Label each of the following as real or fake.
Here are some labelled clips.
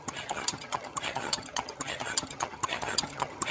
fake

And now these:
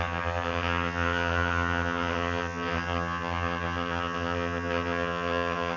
fake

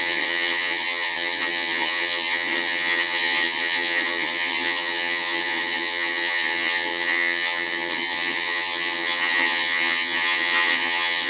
fake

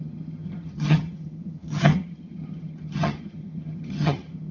fake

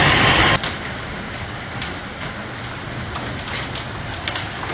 real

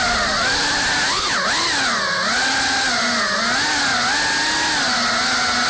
real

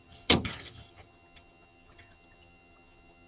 fake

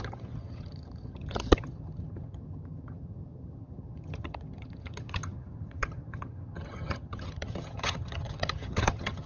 fake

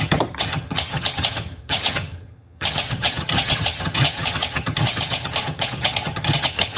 fake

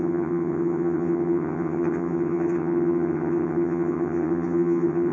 fake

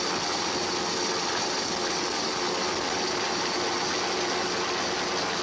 real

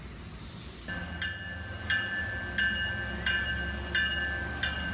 real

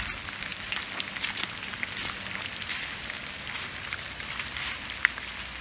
real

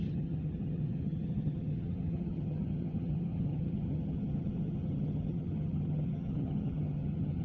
fake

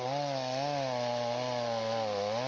real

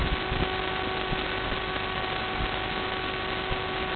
real